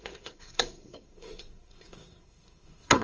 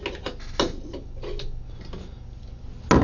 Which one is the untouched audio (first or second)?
second